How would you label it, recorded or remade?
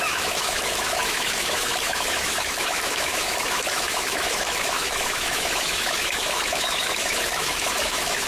remade